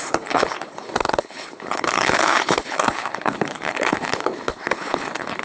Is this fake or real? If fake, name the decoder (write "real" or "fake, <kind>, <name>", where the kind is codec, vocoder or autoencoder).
fake, codec, HILCodec